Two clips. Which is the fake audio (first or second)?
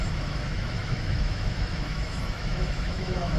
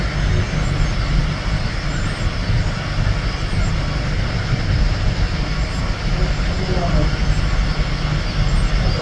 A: first